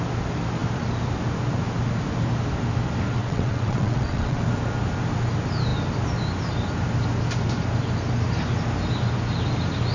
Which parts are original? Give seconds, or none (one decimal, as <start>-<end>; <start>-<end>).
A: 0.0-3.2; 4.4-9.9